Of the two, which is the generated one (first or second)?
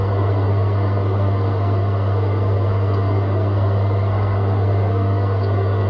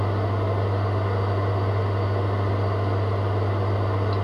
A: first